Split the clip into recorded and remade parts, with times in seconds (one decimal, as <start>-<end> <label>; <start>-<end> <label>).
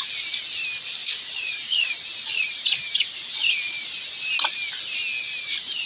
0.0-1.0 recorded; 1.0-3.9 remade; 3.9-5.9 recorded